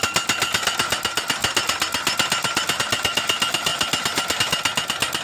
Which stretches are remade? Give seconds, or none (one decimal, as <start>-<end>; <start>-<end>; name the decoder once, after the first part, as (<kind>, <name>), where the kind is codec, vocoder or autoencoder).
none